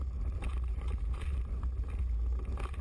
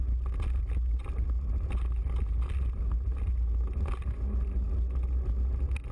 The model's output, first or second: first